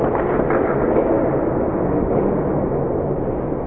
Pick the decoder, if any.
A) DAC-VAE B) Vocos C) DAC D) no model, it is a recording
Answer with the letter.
D